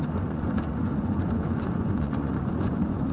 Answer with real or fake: fake